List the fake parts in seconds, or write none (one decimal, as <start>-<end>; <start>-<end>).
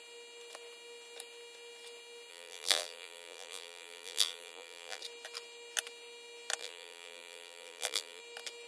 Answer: 2.3-5.0; 6.6-8.2